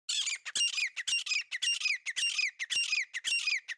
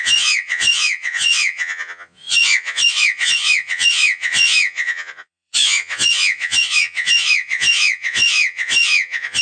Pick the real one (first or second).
first